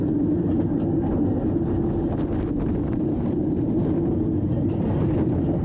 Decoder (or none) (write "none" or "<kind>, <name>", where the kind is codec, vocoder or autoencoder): none